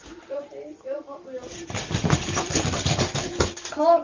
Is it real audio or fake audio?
fake